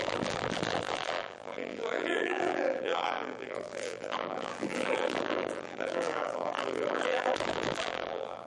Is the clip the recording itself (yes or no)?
no